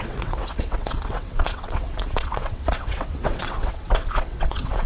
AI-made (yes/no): yes